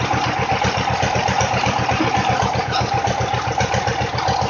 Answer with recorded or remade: recorded